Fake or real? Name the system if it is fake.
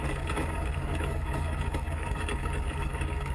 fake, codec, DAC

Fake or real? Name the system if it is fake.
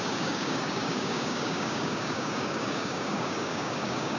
fake, codec, DAC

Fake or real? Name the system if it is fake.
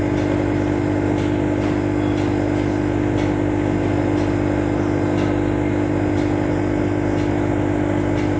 real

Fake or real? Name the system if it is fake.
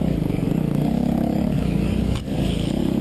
fake, codec, DAC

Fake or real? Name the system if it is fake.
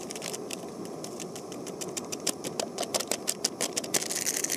real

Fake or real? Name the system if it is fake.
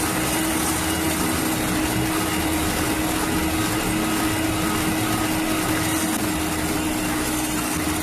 real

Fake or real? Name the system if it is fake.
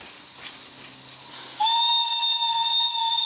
real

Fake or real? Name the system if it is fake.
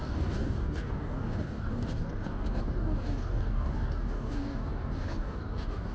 fake, codec, DAC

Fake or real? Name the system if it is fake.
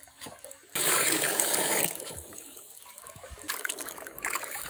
fake, codec, DAC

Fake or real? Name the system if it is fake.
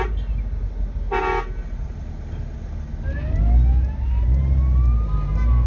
real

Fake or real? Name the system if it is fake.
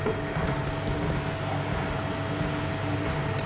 real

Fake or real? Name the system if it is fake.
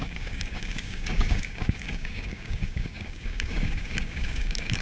fake, codec, DAC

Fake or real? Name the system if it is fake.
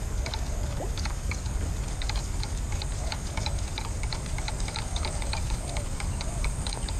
fake, codec, DAC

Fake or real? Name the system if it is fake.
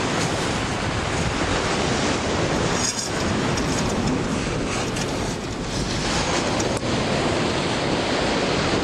real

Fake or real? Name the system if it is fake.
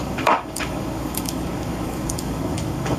fake, codec, DAC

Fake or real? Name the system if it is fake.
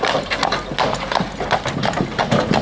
real